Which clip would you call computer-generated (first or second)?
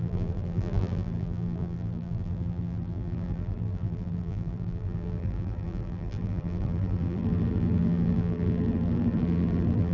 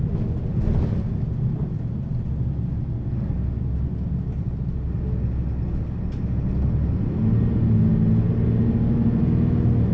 first